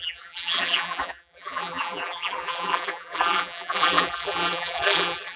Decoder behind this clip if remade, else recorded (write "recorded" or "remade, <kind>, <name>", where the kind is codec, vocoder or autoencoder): remade, vocoder, BigVGAN v2